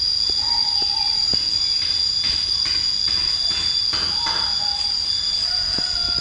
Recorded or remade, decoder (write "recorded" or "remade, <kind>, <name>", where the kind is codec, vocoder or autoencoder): recorded